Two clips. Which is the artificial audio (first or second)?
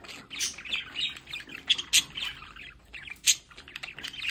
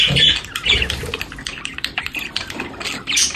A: second